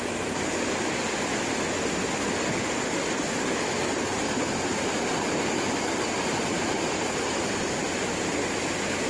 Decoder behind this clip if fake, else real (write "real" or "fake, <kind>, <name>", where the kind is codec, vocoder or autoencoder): real